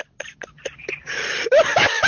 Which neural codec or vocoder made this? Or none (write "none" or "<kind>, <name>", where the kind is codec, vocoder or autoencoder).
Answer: none